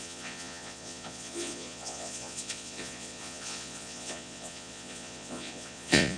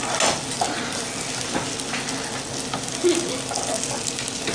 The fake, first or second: first